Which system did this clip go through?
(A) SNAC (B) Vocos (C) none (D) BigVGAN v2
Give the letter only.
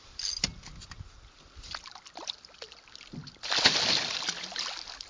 C